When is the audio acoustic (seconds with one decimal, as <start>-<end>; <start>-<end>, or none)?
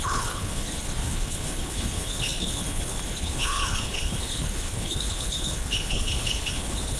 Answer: none